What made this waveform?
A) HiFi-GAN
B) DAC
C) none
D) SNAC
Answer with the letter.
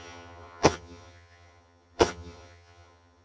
A